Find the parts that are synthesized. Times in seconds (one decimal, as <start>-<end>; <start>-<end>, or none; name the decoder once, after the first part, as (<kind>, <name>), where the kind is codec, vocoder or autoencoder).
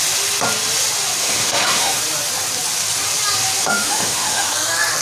1.2-2.0 (autoencoder, DAC-VAE); 3.6-4.5